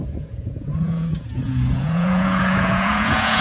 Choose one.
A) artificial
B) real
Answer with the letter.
A